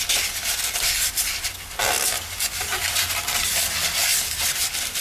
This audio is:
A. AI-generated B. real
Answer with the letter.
B